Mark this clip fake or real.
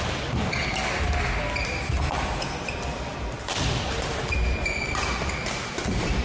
real